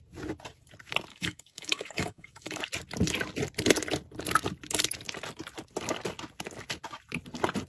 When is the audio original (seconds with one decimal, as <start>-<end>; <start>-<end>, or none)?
0.0-1.1; 2.6-7.7